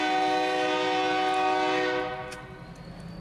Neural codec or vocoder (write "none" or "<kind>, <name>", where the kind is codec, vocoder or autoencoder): none